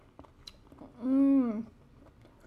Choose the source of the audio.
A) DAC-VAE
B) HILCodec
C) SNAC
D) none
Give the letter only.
D